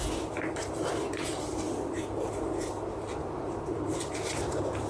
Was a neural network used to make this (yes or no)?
yes